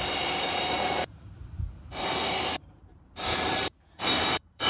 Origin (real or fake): fake